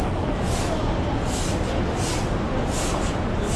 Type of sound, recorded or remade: recorded